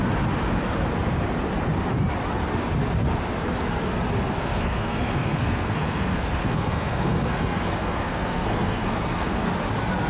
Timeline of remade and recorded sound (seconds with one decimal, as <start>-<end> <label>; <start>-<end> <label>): 0.0-4.4 recorded; 4.4-9.5 remade; 9.5-10.1 recorded